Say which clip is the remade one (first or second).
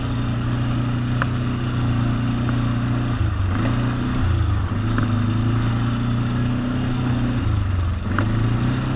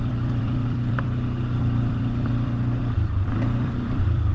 second